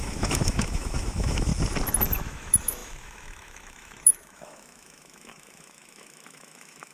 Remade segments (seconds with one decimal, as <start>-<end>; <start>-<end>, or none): 0.0-1.5; 2.2-6.9